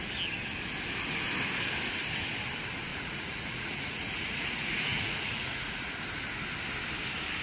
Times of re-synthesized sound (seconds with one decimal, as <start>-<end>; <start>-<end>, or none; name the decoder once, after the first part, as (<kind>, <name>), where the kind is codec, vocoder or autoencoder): 2.9-5.9 (vocoder, Vocos)